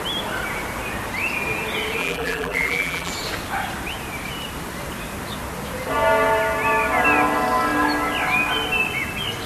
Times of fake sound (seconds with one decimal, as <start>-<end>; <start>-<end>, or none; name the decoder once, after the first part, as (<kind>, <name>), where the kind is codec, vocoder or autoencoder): 2.0-3.1 (vocoder, BigVGAN v2)